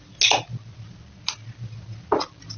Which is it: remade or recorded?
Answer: recorded